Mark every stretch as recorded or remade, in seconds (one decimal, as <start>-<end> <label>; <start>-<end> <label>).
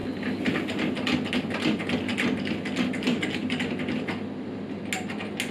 0.0-5.5 recorded